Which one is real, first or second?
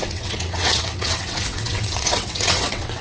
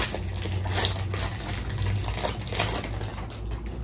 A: second